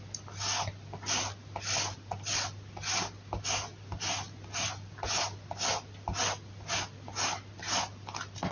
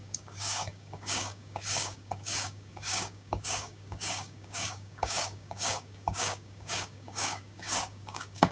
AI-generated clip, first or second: second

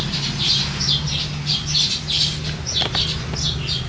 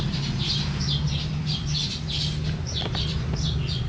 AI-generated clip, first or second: second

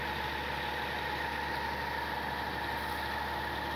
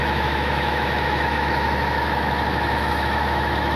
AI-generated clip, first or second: second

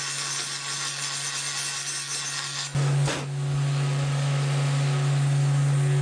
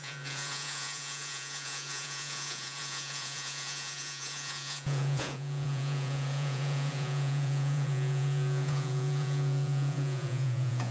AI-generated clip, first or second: second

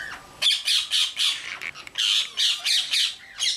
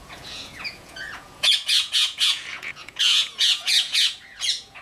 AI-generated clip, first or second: second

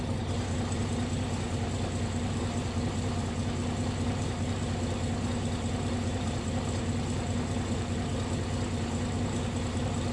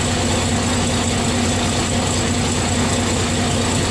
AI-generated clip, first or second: first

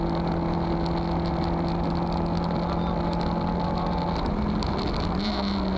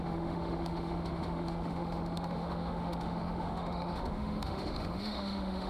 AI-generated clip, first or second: second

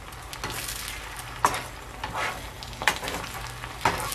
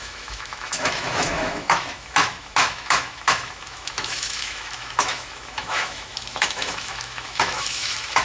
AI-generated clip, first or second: second